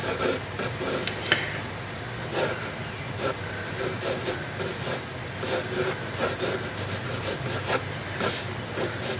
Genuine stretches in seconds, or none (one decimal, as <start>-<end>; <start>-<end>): 0.0-9.2